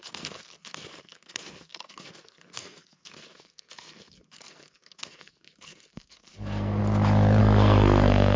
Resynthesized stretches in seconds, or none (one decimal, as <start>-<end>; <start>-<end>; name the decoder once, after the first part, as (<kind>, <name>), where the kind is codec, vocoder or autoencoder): 0.0-6.8 (codec, SNAC); 7.4-8.4